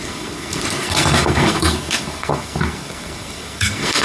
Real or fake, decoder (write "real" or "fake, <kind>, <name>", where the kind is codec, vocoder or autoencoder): fake, codec, SNAC